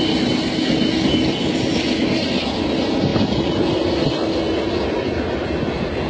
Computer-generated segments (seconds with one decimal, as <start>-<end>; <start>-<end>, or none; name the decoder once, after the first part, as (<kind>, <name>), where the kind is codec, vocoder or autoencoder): none